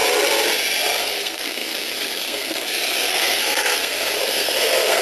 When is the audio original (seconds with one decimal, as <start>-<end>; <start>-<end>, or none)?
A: 0.0-1.0